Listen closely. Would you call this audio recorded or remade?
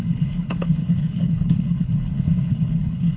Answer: remade